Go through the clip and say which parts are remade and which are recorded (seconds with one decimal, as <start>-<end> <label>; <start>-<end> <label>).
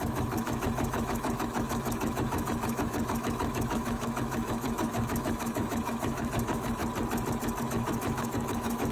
0.0-6.8 remade; 6.8-7.6 recorded; 7.6-8.9 remade